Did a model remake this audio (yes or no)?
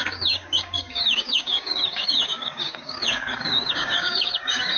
yes